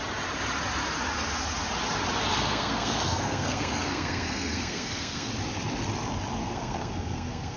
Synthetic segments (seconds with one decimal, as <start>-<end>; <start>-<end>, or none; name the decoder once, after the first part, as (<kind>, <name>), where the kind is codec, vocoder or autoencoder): 2.3-5.3 (codec, SNAC); 6.4-7.6